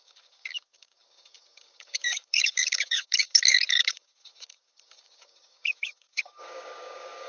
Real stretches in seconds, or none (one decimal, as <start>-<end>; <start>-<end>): none